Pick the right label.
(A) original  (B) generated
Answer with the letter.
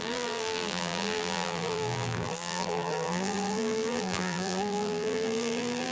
B